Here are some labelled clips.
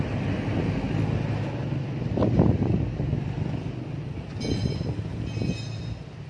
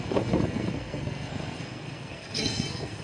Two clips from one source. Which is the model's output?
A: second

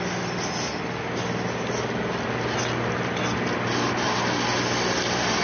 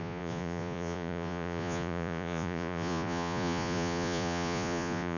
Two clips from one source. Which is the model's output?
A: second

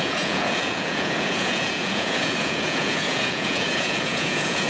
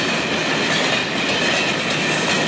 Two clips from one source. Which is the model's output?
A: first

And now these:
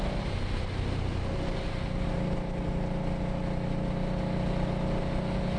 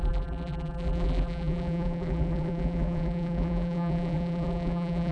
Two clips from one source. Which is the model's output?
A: second